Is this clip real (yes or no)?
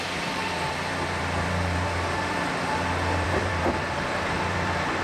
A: no